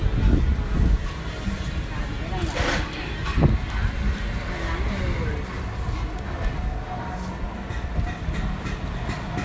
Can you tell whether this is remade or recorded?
recorded